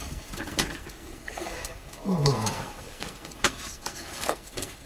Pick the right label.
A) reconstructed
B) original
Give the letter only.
A